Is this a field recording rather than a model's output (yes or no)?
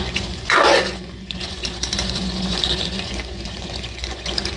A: no